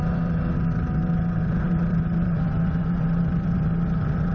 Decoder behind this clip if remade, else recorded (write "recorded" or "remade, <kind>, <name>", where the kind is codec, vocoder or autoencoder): recorded